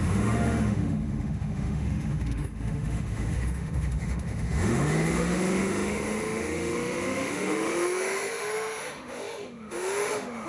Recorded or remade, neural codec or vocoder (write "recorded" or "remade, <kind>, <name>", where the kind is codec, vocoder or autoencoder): remade, autoencoder, DAC-VAE